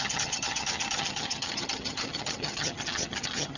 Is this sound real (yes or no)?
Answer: no